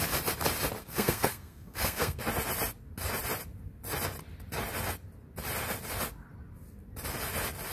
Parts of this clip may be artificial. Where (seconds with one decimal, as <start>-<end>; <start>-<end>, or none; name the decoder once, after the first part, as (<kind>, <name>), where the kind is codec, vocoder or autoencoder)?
0.8-2.2 (codec, SNAC)